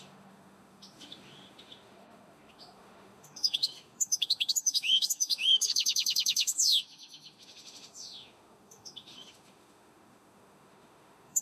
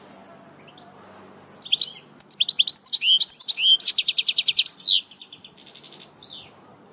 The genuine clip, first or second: second